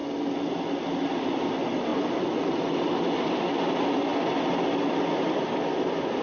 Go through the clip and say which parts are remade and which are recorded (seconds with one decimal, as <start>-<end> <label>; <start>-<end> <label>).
0.0-1.2 recorded; 1.2-4.1 remade; 4.1-5.4 recorded; 5.4-6.2 remade